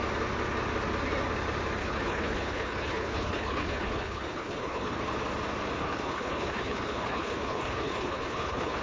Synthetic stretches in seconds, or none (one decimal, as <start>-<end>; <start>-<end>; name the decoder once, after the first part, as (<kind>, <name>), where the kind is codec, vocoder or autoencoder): 1.8-5.0 (codec, HILCodec); 5.8-8.8